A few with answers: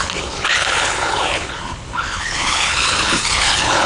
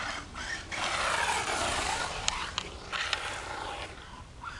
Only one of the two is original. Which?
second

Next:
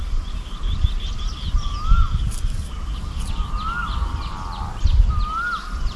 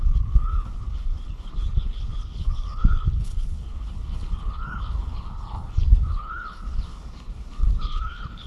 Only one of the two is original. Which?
first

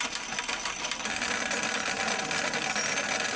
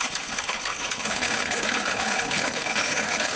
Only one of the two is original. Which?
first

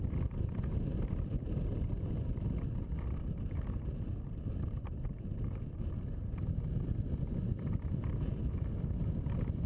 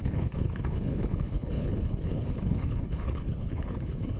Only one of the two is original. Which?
first